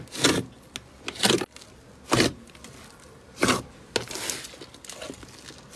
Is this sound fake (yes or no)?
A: no